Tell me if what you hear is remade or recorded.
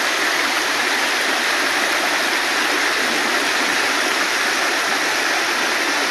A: recorded